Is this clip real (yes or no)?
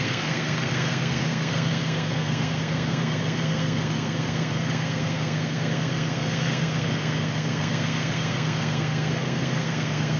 no